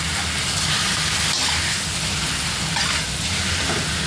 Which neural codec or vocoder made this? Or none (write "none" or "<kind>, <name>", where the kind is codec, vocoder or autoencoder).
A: none